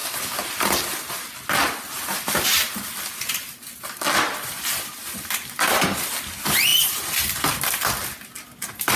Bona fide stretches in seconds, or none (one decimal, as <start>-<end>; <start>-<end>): 3.1-6.7; 7.3-9.0